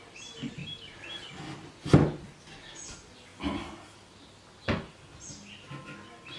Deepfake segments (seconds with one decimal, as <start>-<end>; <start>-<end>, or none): none